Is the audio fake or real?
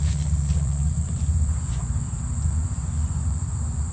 fake